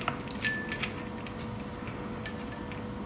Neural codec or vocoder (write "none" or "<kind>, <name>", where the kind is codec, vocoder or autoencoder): none